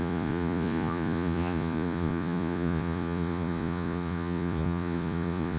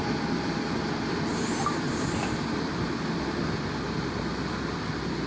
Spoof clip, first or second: first